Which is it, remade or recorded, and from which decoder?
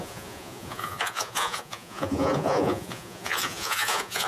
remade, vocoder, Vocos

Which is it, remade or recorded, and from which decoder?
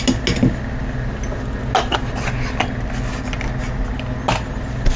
recorded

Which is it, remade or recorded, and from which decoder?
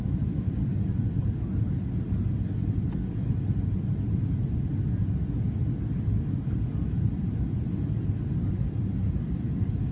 recorded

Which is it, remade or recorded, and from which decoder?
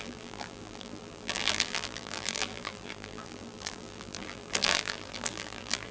remade, vocoder, BigVGAN v2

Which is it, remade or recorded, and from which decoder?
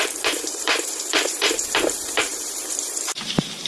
remade, vocoder, BigVGAN v2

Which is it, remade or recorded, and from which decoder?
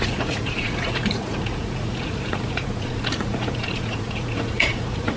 remade, vocoder, Vocos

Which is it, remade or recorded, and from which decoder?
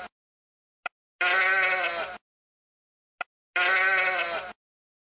recorded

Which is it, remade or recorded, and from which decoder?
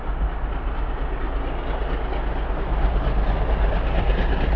recorded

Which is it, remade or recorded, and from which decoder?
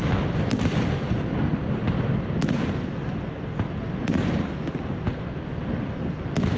recorded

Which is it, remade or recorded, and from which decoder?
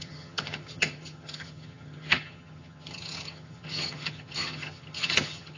remade, vocoder, HiFi-GAN